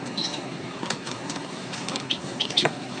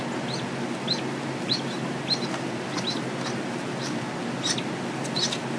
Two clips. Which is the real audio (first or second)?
second